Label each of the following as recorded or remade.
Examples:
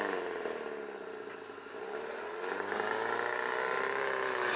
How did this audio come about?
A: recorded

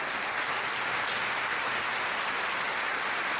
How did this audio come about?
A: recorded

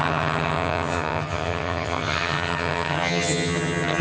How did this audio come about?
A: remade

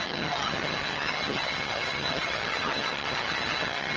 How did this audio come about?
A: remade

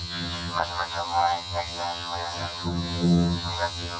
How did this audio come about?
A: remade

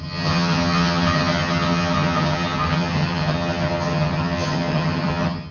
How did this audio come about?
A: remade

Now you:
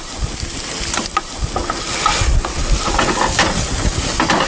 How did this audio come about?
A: recorded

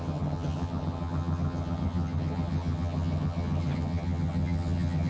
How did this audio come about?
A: remade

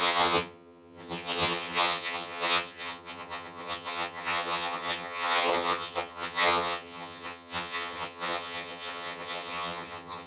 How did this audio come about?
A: remade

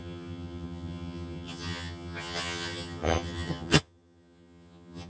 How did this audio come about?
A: remade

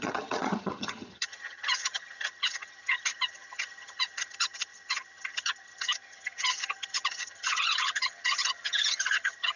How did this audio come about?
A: remade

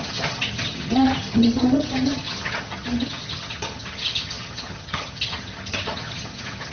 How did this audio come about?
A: remade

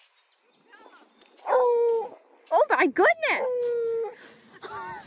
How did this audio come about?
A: recorded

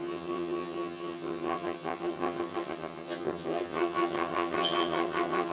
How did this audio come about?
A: remade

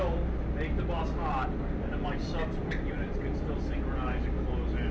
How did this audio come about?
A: recorded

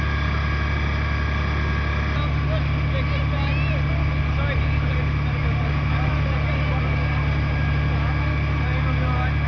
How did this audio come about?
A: recorded